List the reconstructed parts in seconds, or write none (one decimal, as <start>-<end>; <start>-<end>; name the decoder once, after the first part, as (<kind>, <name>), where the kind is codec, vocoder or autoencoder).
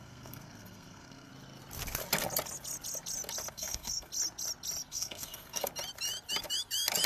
0.0-1.3 (codec, SNAC); 3.5-4.1; 4.9-5.7